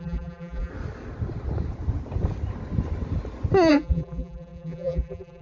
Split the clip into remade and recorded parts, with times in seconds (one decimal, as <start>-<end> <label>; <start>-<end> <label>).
0.0-0.7 remade; 0.7-3.7 recorded; 3.7-5.4 remade